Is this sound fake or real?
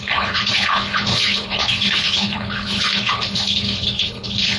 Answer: fake